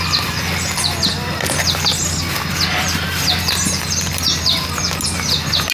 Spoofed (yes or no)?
no